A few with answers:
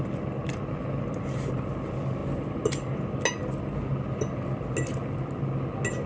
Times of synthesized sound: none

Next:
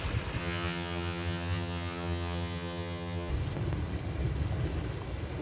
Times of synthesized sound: 0.4-3.3

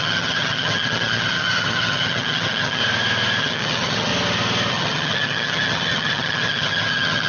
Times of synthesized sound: 0.0-2.8; 3.4-4.1; 4.7-7.3

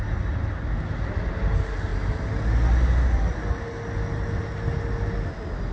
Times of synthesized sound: none